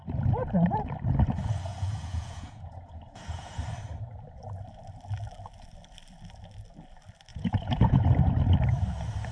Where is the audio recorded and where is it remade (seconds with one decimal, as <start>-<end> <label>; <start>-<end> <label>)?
0.0-1.7 recorded; 1.7-3.6 remade; 3.6-7.3 recorded; 7.3-8.0 remade; 8.0-9.3 recorded